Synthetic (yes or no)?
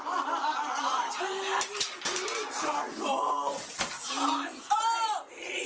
yes